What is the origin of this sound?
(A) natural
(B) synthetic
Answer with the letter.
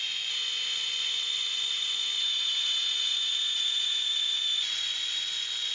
B